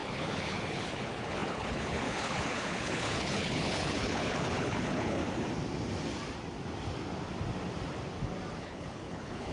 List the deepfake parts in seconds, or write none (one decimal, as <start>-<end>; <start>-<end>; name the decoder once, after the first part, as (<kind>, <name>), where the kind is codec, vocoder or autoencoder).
0.0-5.2 (codec, HILCodec); 8.6-9.5